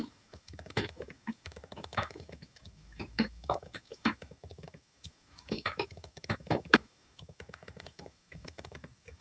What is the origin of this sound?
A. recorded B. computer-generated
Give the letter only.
B